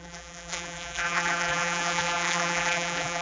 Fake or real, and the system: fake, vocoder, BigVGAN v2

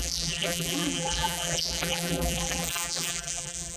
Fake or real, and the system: fake, vocoder, BigVGAN v2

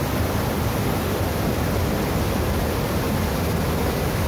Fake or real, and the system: real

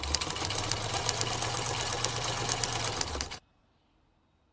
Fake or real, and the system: real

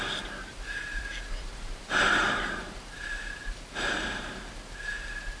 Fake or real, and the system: fake, vocoder, BigVGAN v2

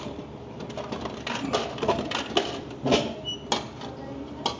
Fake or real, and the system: real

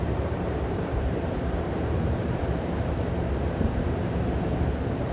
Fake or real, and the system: fake, vocoder, BigVGAN v2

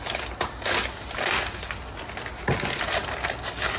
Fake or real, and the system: real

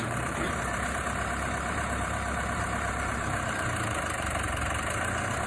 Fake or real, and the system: fake, vocoder, BigVGAN v2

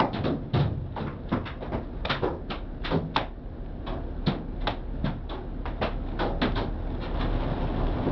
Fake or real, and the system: real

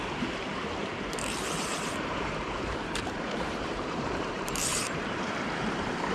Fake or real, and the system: fake, vocoder, BigVGAN v2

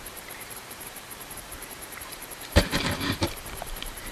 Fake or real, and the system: fake, vocoder, BigVGAN v2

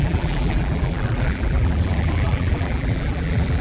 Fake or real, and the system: fake, vocoder, BigVGAN v2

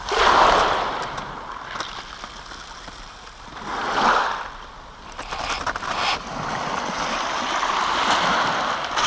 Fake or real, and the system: real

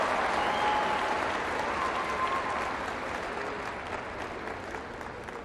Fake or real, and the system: real